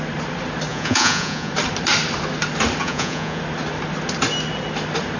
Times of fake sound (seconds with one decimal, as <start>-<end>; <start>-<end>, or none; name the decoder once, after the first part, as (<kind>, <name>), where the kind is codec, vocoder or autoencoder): 0.7-1.5 (vocoder, Vocos); 2.8-3.4